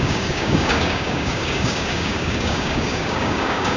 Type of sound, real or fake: fake